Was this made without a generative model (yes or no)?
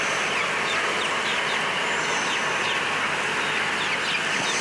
yes